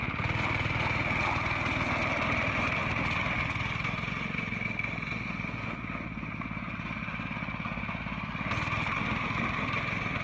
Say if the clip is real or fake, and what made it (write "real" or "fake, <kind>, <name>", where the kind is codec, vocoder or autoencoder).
real